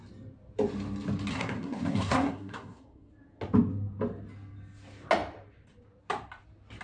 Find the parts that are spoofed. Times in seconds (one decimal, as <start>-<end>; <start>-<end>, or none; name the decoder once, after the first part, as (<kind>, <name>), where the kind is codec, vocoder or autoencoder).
1.3-3.1 (codec, SNAC)